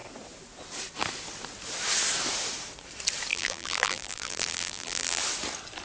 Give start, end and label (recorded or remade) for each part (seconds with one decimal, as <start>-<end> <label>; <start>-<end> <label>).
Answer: 0.0-3.3 recorded; 3.3-5.2 remade; 5.2-5.8 recorded